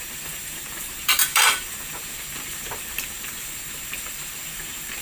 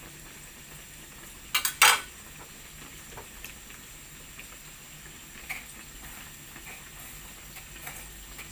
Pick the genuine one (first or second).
second